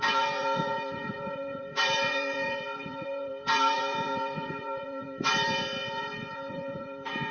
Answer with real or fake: fake